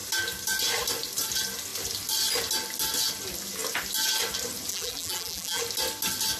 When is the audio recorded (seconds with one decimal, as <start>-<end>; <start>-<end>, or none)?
0.0-4.7; 5.6-6.4

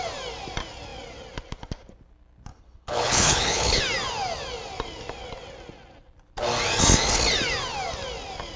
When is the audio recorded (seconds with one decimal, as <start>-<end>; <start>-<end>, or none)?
0.0-2.5; 3.8-8.6

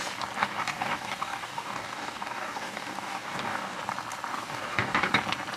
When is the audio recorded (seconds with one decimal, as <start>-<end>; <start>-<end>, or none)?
0.0-0.4; 3.8-4.3; 5.1-5.6

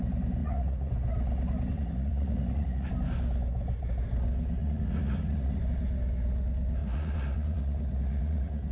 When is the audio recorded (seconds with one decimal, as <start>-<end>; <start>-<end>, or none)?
0.0-0.4; 0.9-1.7; 2.9-4.6; 5.6-6.8

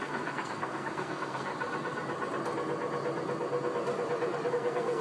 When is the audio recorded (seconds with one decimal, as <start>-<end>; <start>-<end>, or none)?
1.5-4.5

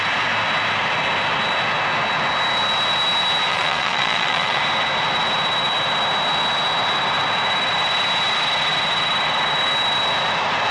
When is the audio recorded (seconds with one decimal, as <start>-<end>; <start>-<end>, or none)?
0.0-3.5; 4.6-10.7